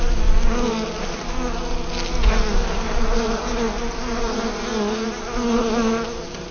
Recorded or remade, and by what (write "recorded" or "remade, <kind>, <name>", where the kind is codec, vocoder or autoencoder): recorded